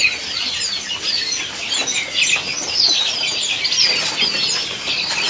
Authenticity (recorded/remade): recorded